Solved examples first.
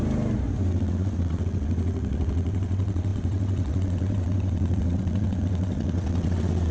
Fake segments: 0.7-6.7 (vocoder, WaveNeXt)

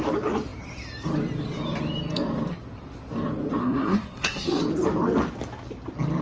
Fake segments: 3.6-4.6 (codec, SNAC)